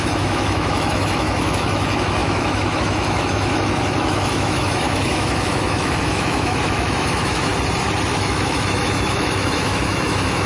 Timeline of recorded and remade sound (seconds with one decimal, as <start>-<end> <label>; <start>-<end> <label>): 0.0-7.5 remade; 7.5-8.1 recorded; 8.1-10.5 remade

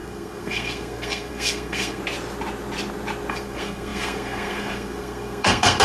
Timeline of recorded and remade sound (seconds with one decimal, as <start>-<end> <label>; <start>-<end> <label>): 0.0-2.0 remade; 2.0-3.3 recorded; 3.3-5.8 remade

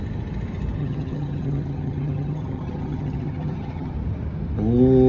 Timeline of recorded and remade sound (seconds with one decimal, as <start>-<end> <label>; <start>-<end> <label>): 0.0-0.8 recorded; 0.8-3.9 remade; 3.9-5.1 recorded